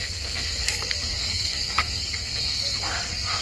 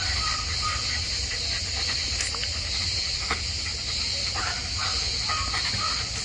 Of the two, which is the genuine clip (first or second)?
second